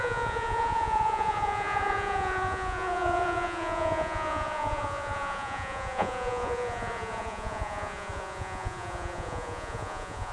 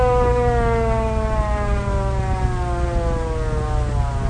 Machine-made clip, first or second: first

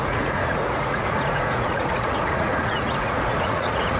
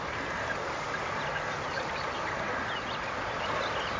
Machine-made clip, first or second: first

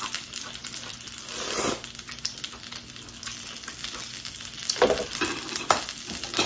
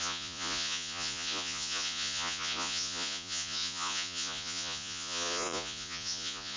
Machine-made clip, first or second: second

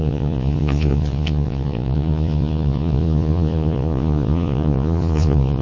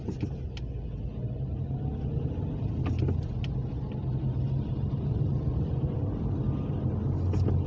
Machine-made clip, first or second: first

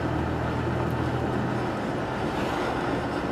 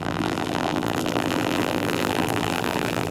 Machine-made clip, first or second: second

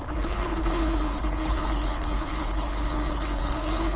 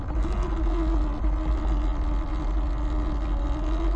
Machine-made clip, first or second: first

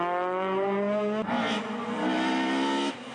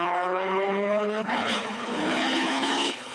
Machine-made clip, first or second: second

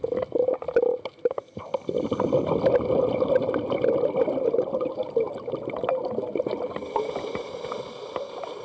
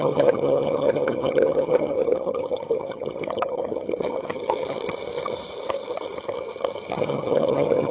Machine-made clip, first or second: second